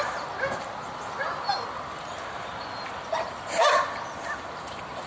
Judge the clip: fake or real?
real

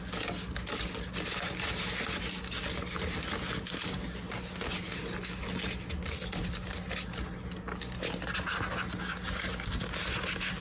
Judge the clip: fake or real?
real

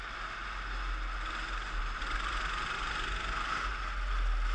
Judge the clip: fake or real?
real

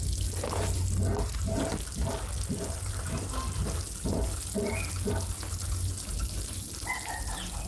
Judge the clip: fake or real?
real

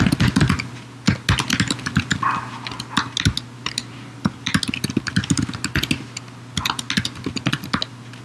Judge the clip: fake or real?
real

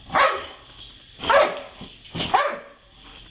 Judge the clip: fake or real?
real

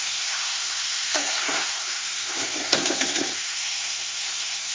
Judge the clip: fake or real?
fake